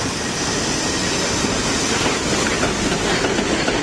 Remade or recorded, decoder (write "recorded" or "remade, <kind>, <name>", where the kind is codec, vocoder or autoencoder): recorded